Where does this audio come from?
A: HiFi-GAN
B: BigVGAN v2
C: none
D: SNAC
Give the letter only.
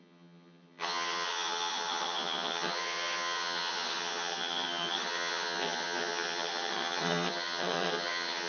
A